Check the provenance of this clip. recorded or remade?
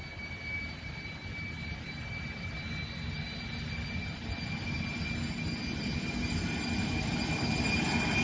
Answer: recorded